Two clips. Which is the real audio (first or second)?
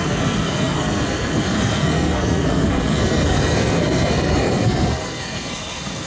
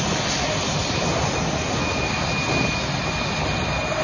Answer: second